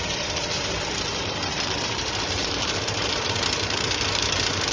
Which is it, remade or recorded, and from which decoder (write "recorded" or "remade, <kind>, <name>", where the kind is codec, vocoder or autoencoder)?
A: remade, vocoder, BigVGAN v2